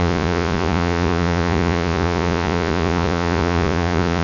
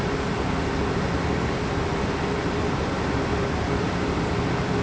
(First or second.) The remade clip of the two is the first